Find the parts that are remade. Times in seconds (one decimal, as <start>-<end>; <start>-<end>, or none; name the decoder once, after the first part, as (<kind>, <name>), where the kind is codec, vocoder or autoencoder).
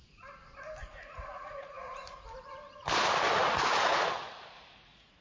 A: 0.8-2.2 (vocoder, Vocos); 3.4-5.2